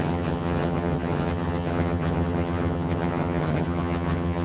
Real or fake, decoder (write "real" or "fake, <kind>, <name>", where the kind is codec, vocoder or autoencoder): fake, vocoder, HiFi-GAN